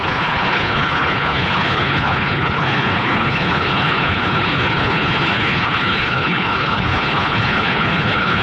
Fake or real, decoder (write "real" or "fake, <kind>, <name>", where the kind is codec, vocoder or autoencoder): fake, codec, HILCodec